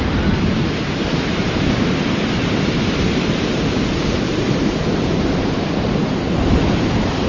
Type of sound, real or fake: fake